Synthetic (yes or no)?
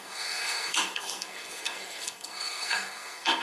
yes